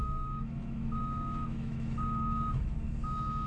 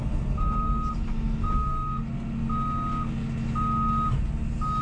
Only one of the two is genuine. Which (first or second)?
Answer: second